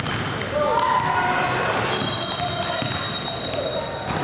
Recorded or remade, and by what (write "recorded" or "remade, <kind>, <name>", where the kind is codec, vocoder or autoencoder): recorded